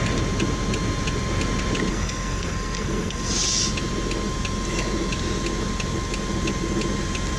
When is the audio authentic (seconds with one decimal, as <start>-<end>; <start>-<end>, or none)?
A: 0.0-1.9; 3.3-7.4